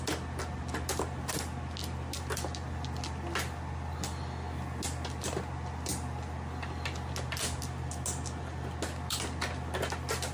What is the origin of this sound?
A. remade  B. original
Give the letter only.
B